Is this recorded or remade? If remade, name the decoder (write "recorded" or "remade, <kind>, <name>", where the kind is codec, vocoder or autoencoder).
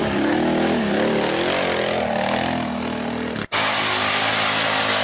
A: recorded